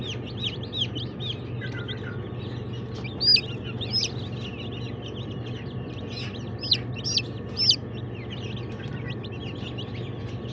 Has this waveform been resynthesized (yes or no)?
no